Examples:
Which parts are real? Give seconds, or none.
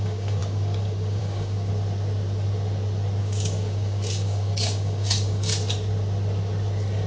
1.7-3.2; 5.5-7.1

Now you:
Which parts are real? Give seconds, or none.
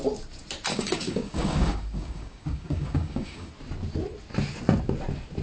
0.0-0.7; 3.5-5.4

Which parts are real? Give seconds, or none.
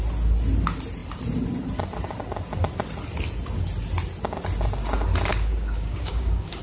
0.0-5.3